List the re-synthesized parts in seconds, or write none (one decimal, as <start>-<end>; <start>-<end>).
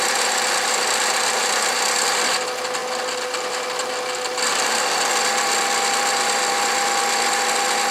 none